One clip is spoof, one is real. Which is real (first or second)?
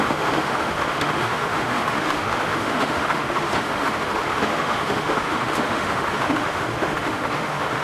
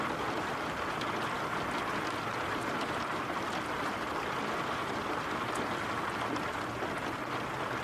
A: second